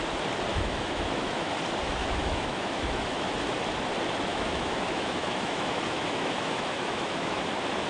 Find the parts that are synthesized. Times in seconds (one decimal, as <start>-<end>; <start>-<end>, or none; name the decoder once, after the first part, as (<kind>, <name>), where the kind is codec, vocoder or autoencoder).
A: 0.5-1.5 (autoencoder, DAC-VAE); 2.0-3.3; 4.3-7.4